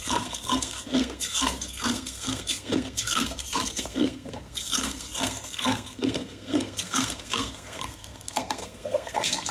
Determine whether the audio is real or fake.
fake